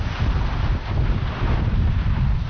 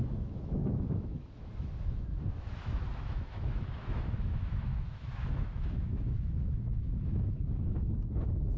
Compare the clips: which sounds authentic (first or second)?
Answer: first